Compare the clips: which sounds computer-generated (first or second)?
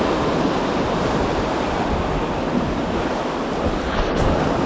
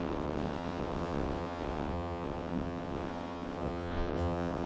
second